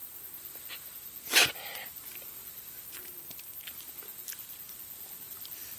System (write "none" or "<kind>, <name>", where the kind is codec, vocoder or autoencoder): none